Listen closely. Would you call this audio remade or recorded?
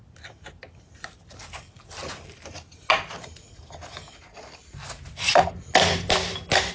recorded